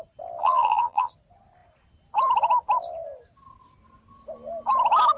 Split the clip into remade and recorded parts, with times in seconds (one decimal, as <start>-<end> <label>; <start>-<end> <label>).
0.0-0.4 recorded; 0.4-1.1 remade; 1.1-5.2 recorded